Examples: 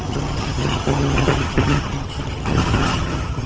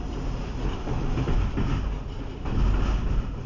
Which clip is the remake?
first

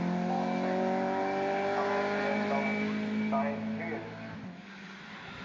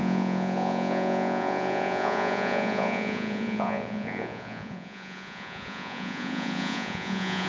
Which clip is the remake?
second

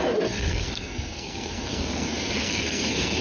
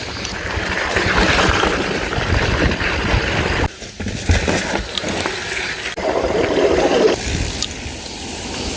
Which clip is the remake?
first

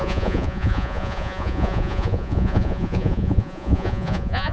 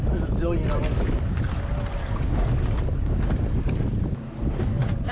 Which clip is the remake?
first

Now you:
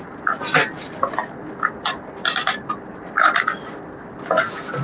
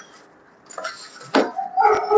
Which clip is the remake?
first